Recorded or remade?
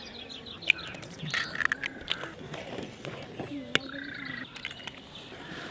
recorded